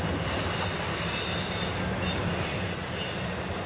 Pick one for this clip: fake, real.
real